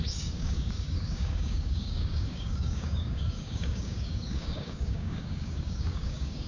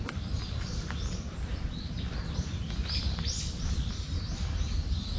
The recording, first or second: second